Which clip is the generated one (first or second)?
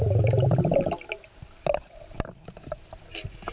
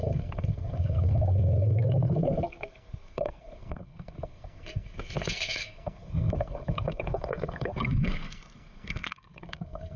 second